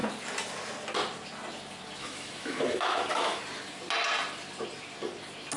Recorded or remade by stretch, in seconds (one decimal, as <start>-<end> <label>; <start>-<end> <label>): 0.0-2.0 recorded; 2.0-3.4 remade; 3.4-5.6 recorded